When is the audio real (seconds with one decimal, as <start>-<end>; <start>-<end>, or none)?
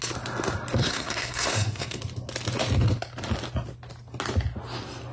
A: 0.0-0.8; 2.0-5.1